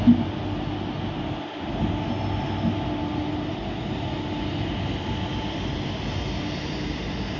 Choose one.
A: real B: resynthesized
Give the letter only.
A